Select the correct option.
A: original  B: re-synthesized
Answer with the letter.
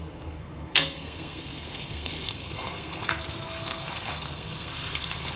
B